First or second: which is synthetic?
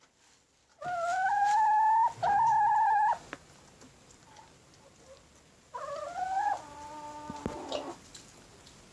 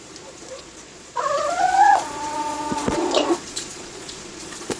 second